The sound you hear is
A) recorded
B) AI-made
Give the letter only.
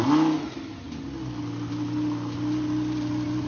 A